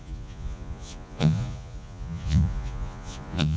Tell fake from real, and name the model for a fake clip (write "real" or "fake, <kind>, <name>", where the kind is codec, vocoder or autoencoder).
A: fake, vocoder, Vocos